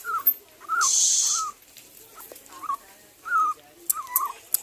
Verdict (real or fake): real